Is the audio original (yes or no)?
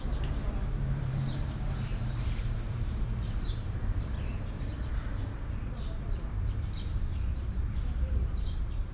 no